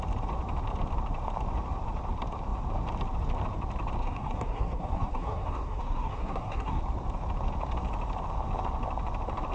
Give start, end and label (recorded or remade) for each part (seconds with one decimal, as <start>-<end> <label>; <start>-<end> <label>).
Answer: 0.0-4.0 recorded; 4.0-6.8 remade; 6.8-9.5 recorded